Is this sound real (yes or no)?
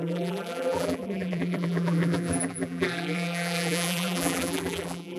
no